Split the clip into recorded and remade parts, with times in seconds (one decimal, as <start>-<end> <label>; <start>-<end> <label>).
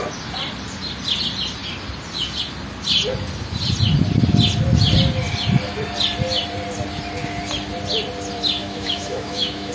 0.0-8.6 recorded; 8.6-9.7 remade